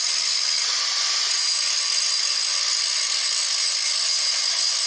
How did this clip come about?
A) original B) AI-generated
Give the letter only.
A